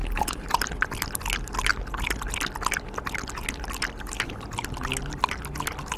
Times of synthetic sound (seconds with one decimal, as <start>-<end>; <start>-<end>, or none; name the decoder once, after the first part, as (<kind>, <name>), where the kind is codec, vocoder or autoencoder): none